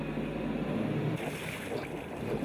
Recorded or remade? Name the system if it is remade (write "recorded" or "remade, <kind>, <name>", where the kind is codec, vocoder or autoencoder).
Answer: recorded